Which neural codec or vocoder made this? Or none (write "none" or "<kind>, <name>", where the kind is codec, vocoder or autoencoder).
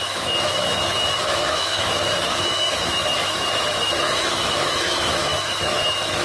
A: autoencoder, DAC-VAE